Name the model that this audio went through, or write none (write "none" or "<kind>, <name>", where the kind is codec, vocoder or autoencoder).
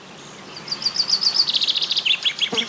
none